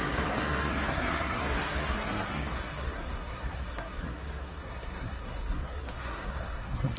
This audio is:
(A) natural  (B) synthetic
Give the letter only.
B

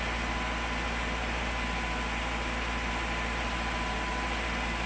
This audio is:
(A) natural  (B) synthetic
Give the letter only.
A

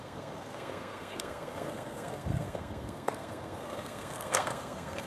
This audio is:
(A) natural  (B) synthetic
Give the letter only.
B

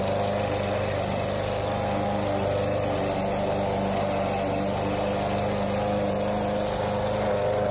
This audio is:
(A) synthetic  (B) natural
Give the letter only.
B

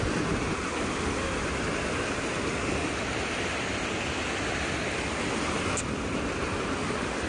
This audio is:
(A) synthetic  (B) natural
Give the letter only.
B